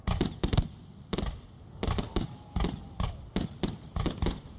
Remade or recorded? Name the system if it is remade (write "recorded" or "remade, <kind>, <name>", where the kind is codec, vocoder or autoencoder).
recorded